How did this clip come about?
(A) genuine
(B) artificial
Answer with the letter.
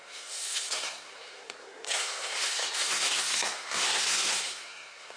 B